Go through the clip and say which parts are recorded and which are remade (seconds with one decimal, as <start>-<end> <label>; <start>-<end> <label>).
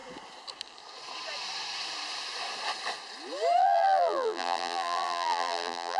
0.0-3.6 recorded; 3.6-6.0 remade